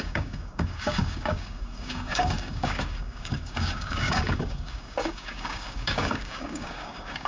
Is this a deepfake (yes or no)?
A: yes